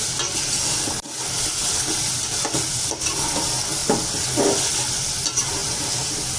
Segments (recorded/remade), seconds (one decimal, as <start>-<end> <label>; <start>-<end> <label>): 0.0-1.6 recorded; 1.6-2.8 remade; 2.8-6.4 recorded